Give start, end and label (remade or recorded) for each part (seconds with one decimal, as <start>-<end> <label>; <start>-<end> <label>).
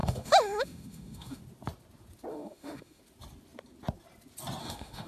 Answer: 0.0-1.4 remade; 1.4-2.3 recorded; 2.3-3.0 remade; 3.0-4.6 recorded; 4.6-5.1 remade